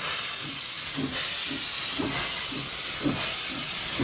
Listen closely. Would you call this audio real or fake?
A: real